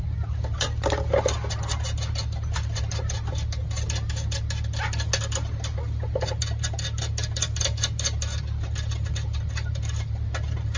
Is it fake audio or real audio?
real